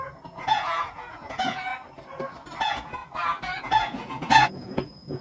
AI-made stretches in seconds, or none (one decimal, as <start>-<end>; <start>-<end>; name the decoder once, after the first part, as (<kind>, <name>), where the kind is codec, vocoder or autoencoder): 0.0-1.7 (vocoder, Vocos); 2.6-3.0; 3.6-5.2